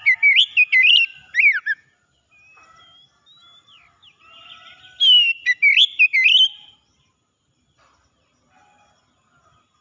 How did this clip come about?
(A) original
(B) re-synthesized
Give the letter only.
A